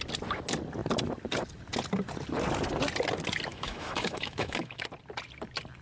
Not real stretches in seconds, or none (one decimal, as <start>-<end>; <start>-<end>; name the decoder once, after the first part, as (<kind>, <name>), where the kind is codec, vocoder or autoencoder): 3.5-4.8 (autoencoder, DAC-VAE)